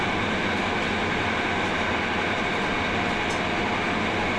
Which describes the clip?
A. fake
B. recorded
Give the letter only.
B